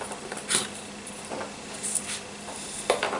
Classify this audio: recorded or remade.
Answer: recorded